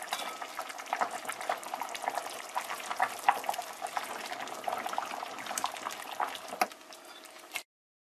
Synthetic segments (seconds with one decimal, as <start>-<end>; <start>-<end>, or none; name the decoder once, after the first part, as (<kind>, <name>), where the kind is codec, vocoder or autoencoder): none